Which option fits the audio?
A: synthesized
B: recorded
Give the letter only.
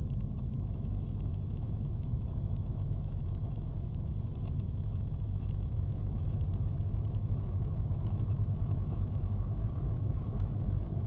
A